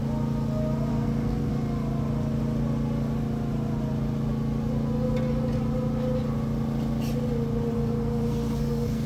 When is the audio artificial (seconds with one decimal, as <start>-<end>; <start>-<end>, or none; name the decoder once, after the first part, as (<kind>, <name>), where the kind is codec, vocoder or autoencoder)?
0.9-1.5 (codec, SNAC); 7.7-9.1